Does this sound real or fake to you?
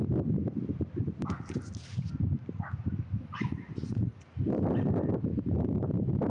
real